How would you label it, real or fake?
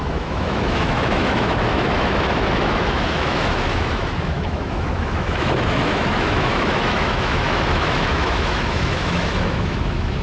fake